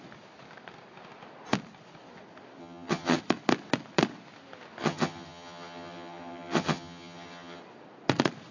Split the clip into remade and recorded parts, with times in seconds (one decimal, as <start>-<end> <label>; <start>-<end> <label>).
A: 0.0-2.6 recorded; 2.6-3.2 remade; 3.2-4.8 recorded; 4.8-7.6 remade; 7.6-8.5 recorded